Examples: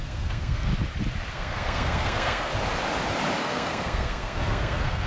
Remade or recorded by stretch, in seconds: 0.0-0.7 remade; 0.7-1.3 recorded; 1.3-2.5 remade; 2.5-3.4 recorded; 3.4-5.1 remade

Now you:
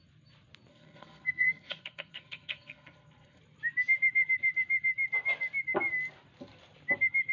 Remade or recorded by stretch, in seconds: 0.0-0.7 recorded; 0.7-3.4 remade; 3.4-7.3 recorded

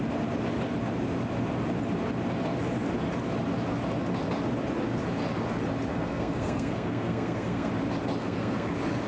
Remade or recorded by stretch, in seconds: 0.0-5.9 recorded; 5.9-7.7 remade; 7.7-8.2 recorded; 8.2-8.7 remade; 8.7-9.1 recorded

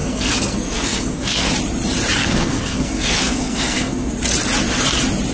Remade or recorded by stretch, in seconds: 0.0-1.5 remade; 1.5-2.2 recorded; 2.2-4.1 remade; 4.1-5.3 recorded

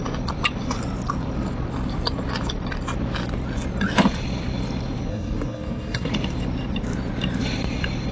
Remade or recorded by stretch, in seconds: 0.0-5.1 recorded; 5.1-6.1 remade; 6.1-8.1 recorded